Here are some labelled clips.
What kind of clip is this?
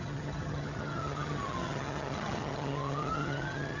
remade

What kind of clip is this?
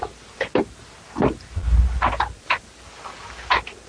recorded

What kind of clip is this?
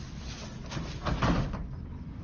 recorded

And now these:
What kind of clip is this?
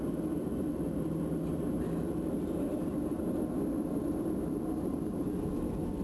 remade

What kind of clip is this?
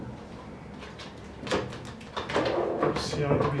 recorded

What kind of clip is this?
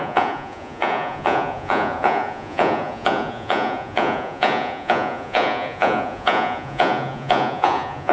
remade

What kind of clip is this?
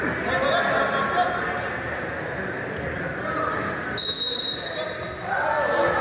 recorded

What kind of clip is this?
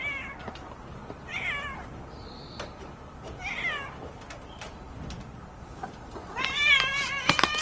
recorded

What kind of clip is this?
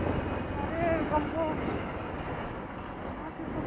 recorded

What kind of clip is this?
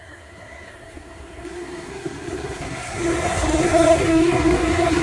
remade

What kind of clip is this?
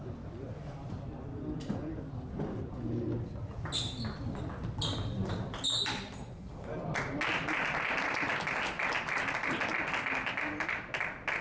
recorded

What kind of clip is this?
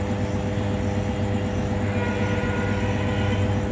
recorded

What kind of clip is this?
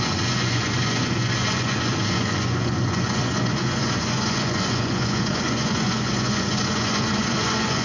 remade